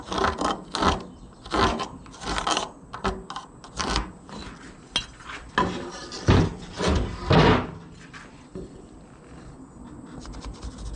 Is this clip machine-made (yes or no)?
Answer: no